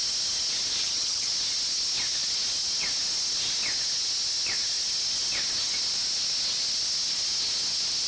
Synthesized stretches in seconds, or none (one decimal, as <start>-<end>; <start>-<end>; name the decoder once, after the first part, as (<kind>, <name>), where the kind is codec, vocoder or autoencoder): 0.8-1.3 (vocoder, HiFi-GAN)